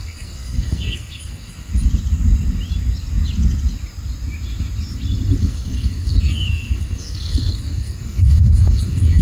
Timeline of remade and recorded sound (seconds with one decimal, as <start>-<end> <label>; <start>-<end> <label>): 0.0-1.7 remade; 1.7-5.4 recorded; 5.4-9.2 remade